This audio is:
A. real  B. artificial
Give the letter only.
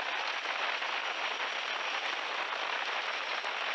A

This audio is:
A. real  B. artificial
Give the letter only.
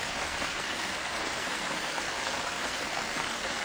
B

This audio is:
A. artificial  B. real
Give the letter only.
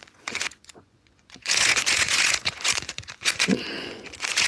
A